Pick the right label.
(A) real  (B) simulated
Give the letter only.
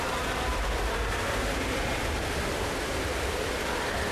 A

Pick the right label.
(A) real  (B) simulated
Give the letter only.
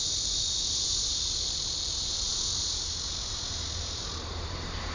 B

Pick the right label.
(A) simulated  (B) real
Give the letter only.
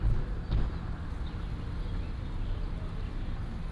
B